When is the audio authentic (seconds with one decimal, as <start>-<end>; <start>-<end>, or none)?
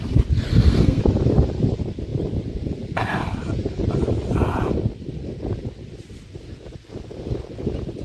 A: 0.0-0.5; 1.0-8.0